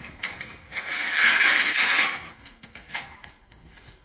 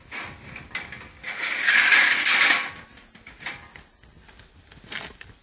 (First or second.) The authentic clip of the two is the second